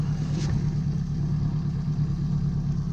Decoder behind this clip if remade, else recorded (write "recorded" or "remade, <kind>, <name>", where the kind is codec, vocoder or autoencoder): recorded